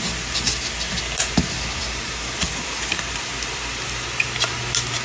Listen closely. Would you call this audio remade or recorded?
recorded